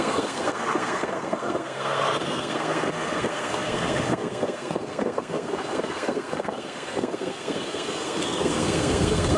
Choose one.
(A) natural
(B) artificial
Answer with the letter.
B